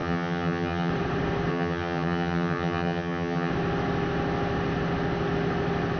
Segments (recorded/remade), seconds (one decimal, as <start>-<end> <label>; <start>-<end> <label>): 0.0-0.9 remade; 0.9-1.5 recorded; 1.5-3.5 remade; 3.5-6.0 recorded